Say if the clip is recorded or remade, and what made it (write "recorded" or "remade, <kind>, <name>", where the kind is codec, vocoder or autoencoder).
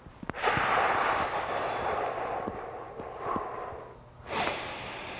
recorded